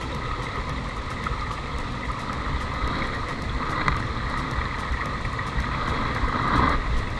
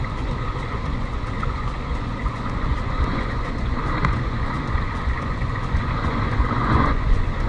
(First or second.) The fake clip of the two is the second